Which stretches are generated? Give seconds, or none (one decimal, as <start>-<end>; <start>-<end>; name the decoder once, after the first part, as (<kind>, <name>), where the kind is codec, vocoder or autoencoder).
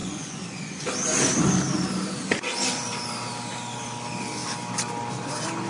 0.0-0.9 (vocoder, Vocos)